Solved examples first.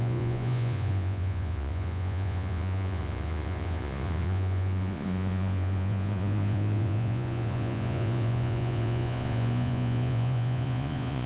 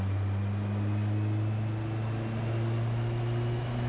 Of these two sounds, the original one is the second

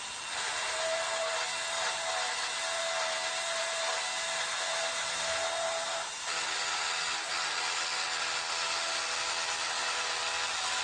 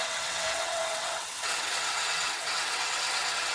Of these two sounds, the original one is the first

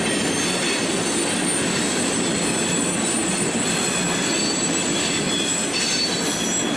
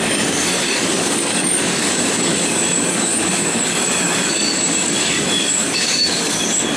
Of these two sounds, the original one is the first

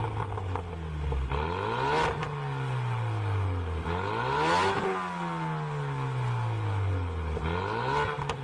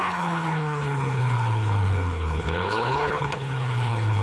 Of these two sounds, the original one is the first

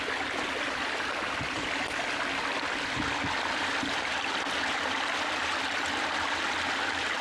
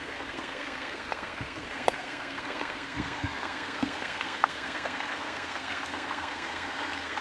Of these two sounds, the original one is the first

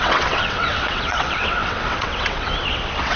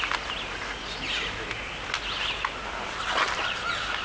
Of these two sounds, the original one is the second